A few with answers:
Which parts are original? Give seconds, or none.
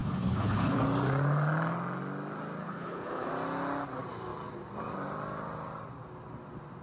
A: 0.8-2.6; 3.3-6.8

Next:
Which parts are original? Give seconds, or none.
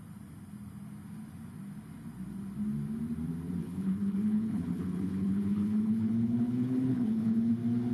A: 0.0-3.6; 7.5-7.9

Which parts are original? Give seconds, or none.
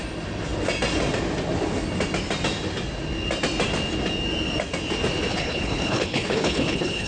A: 0.0-5.3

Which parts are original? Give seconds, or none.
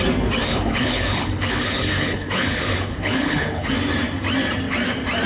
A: 0.0-0.5; 3.7-5.3